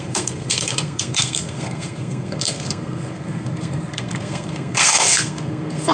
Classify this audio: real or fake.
fake